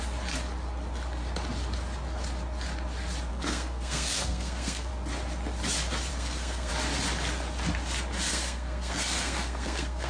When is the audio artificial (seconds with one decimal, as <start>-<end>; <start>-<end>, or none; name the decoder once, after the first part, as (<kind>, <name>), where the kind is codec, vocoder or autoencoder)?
3.3-4.9 (codec, SNAC); 6.1-6.7; 8.3-10.1